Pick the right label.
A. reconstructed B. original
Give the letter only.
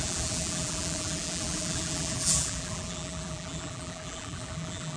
A